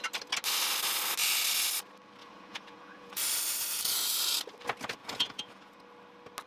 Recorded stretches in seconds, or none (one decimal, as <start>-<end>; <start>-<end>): 0.0-2.2; 3.2-5.0; 5.7-6.5